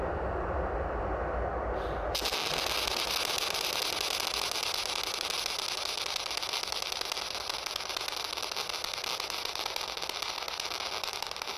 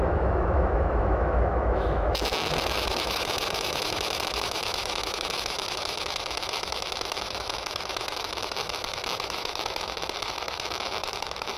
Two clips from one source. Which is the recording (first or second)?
first